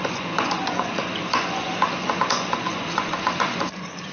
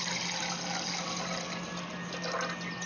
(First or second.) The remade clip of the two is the first